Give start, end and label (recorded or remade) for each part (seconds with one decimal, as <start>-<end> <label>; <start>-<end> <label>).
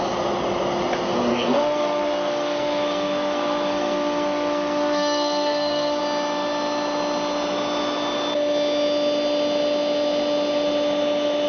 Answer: 0.0-1.3 recorded; 1.3-6.0 remade; 6.0-11.5 recorded